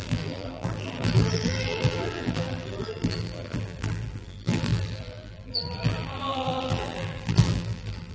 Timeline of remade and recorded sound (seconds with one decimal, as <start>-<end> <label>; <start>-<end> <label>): 0.0-8.1 remade